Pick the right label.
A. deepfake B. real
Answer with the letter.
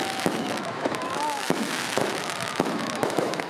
A